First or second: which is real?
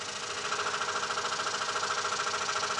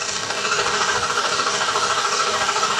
first